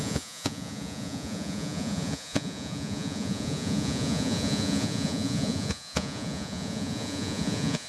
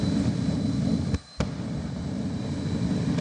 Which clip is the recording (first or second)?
second